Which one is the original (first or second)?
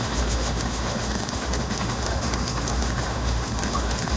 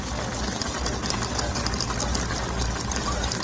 second